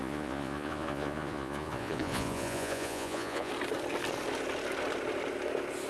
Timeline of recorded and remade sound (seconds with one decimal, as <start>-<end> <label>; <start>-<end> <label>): 0.0-3.5 remade; 3.5-5.9 recorded